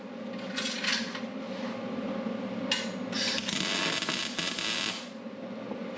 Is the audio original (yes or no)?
yes